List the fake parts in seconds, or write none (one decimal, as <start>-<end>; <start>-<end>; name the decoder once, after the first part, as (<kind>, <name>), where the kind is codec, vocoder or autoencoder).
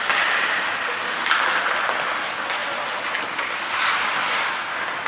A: none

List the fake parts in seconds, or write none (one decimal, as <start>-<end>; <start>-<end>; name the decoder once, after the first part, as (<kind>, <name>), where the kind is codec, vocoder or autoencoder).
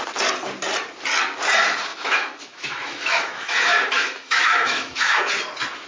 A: 1.9-5.2 (autoencoder, DAC-VAE)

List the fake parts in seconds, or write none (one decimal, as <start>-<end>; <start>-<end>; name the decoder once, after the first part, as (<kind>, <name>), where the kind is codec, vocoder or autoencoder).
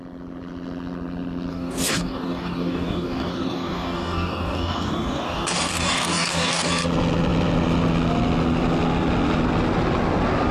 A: 1.5-6.7 (codec, DAC)